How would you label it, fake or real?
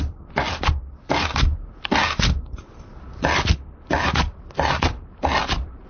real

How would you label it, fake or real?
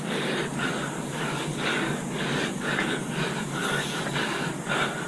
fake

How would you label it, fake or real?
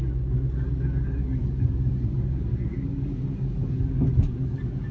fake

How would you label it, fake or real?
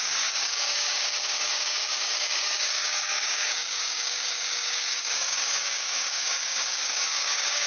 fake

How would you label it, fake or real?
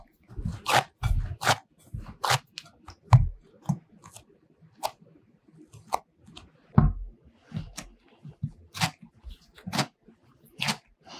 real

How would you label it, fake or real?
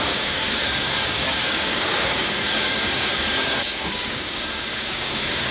fake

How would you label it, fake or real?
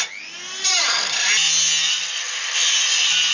real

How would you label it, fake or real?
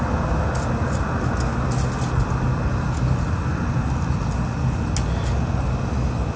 real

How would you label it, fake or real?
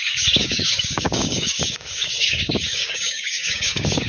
fake